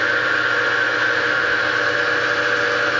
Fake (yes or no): no